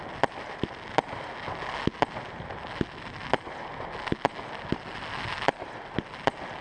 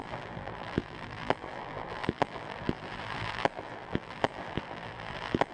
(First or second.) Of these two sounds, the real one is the first